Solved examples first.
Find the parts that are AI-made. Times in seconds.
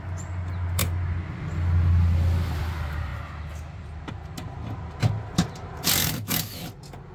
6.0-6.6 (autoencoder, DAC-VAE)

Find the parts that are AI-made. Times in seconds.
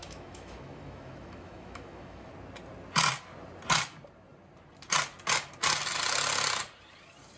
0.0-2.3 (autoencoder, DAC-VAE)